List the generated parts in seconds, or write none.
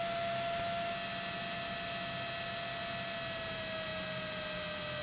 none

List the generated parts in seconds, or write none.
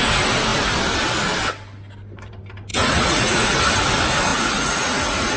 2.7-3.6 (vocoder, Vocos); 4.3-5.4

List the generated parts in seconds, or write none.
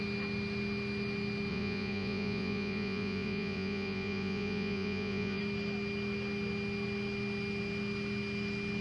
1.5-5.4 (vocoder, Vocos)